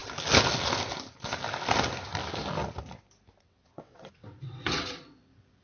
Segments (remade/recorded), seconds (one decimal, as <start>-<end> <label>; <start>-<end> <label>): 0.0-3.4 recorded; 3.4-5.6 remade